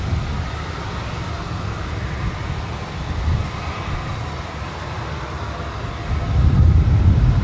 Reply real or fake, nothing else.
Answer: real